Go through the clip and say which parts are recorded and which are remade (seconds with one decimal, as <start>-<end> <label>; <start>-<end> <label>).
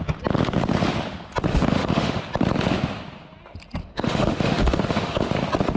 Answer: 0.0-1.5 recorded; 1.5-2.2 remade; 2.2-3.8 recorded; 3.8-5.3 remade; 5.3-5.8 recorded